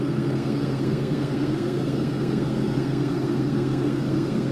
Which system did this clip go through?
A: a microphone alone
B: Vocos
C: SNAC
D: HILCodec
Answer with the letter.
C